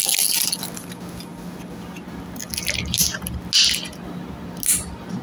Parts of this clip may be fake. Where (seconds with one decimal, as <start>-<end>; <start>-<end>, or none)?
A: none